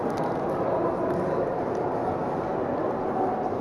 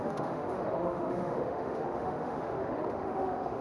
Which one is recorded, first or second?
first